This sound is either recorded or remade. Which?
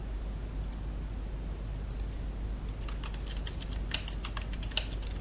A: recorded